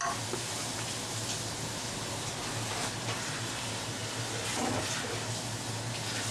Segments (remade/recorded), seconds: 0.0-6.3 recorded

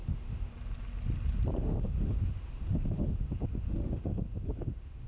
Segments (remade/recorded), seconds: 0.0-0.5 remade; 0.5-1.6 recorded; 1.6-5.1 remade

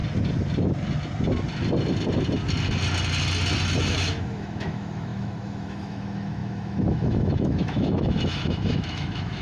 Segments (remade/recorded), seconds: 0.0-3.8 recorded; 3.8-9.4 remade

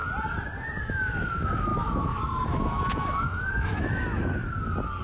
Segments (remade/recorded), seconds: 0.0-0.8 recorded; 0.8-4.1 remade; 4.1-5.0 recorded

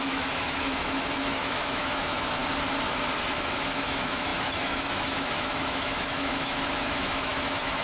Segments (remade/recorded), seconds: 0.0-2.4 remade; 2.4-3.3 recorded; 3.3-7.8 remade

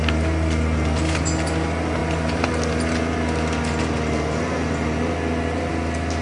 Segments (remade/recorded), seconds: 0.0-6.2 recorded

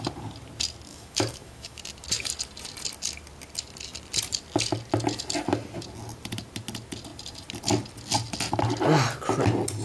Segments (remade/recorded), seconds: 0.0-0.9 recorded; 0.9-1.8 remade; 1.8-9.8 recorded